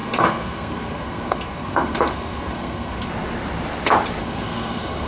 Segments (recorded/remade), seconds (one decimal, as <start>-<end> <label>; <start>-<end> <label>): 0.0-3.1 remade; 3.1-4.2 recorded; 4.2-5.1 remade

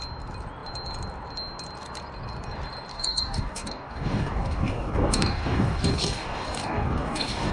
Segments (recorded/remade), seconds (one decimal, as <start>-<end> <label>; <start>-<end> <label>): 0.0-2.9 recorded; 2.9-7.5 remade

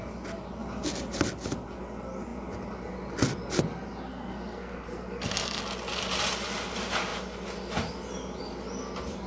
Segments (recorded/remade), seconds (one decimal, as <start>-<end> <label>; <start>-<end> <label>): 0.0-4.1 recorded; 4.1-5.6 remade; 5.6-9.3 recorded

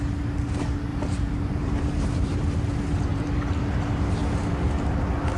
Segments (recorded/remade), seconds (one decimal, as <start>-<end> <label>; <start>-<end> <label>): 0.0-0.9 recorded; 0.9-2.4 remade; 2.4-3.1 recorded; 3.1-3.6 remade; 3.6-5.4 recorded

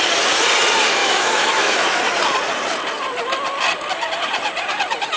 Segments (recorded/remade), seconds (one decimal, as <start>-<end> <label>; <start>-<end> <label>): 0.0-1.0 recorded; 1.0-2.0 remade; 2.0-5.2 recorded

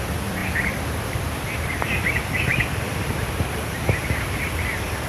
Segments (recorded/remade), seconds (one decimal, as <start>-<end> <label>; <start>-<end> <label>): 0.0-0.4 recorded; 0.4-1.4 remade; 1.4-2.5 recorded; 2.5-4.0 remade; 4.0-5.1 recorded